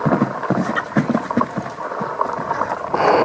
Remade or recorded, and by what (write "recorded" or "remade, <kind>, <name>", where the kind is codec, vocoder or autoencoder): recorded